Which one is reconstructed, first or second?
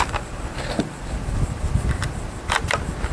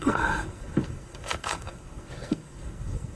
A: second